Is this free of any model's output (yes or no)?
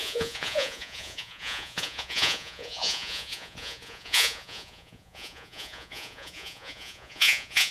no